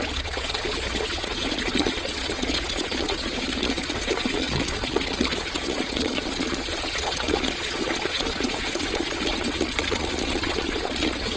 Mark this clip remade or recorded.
remade